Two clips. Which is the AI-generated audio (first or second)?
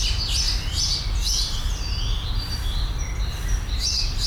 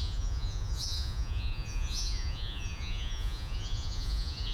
second